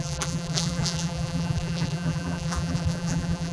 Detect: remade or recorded remade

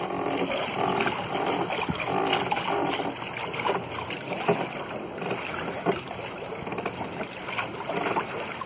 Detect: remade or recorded recorded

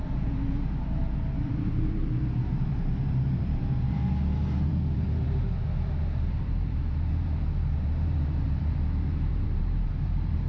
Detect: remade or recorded remade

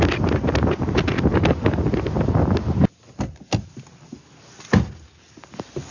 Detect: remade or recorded recorded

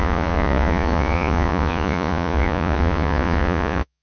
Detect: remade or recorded remade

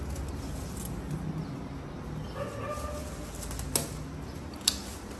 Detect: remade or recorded recorded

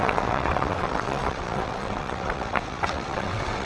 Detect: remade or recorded remade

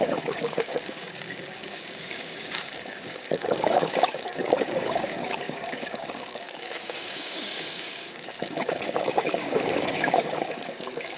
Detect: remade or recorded remade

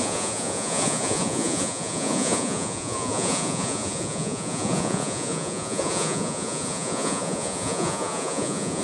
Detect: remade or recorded remade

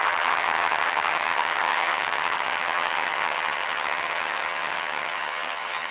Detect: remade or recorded remade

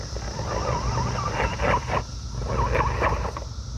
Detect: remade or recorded recorded